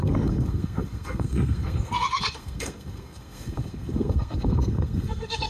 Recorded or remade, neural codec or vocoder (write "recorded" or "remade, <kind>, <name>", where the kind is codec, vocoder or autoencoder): remade, codec, SNAC